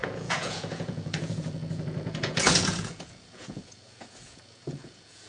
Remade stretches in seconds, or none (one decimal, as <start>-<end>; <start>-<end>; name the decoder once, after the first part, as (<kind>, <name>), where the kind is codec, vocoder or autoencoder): 0.0-5.3 (vocoder, Vocos)